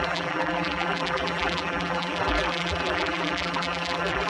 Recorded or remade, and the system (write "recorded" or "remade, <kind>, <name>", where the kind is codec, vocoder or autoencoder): remade, vocoder, BigVGAN v2